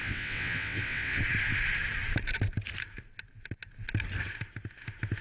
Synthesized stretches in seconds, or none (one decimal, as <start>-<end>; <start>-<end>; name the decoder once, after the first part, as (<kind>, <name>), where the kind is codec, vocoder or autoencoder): 0.0-1.2 (vocoder, WaveNeXt)